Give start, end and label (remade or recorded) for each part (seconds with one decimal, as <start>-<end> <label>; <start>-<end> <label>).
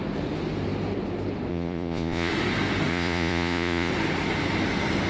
0.0-1.5 recorded; 1.5-2.3 remade; 2.3-2.9 recorded; 2.9-3.9 remade; 3.9-5.1 recorded